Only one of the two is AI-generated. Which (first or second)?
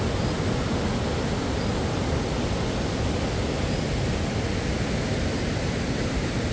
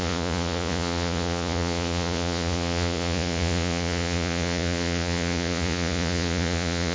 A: second